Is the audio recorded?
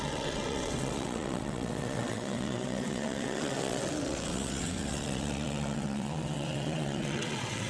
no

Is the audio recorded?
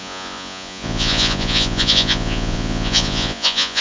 no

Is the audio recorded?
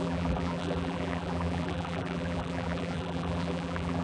no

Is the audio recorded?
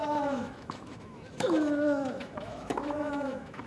no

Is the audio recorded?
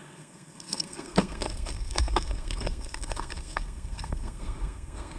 no